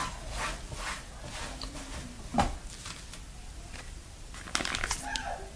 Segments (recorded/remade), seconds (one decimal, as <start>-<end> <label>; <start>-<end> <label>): 0.0-5.6 recorded